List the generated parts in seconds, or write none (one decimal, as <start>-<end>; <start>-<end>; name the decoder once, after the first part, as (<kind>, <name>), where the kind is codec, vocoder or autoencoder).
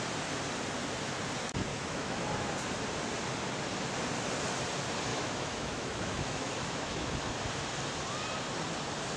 1.7-2.2 (autoencoder, DAC-VAE); 5.1-7.1